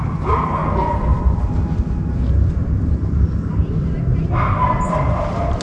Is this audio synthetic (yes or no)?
no